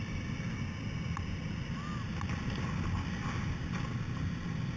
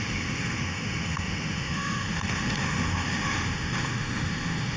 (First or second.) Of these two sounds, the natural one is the first